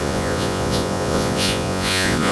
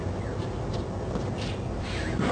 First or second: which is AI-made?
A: first